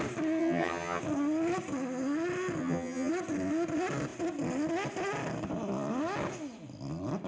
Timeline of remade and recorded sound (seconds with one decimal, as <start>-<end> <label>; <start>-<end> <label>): 0.0-0.4 recorded; 0.4-1.0 remade; 1.0-2.6 recorded; 2.6-3.1 remade; 3.1-7.3 recorded